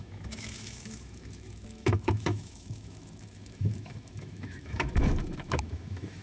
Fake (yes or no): yes